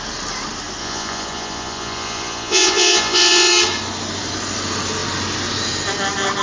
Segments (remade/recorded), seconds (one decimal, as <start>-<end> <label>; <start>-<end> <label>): 0.0-0.8 recorded; 0.8-3.5 remade; 3.5-6.4 recorded